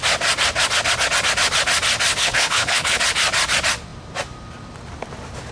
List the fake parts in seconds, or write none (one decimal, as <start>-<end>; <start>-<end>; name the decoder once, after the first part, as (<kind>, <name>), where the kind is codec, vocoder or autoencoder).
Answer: 2.1-3.0 (codec, HILCodec)